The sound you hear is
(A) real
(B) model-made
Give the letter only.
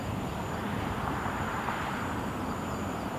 B